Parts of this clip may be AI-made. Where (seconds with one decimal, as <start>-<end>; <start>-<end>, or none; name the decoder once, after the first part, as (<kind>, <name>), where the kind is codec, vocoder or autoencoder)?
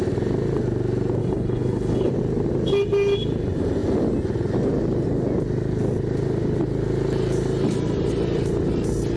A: 1.2-2.1 (codec, HILCodec)